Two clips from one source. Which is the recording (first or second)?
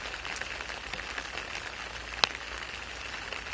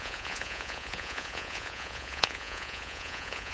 first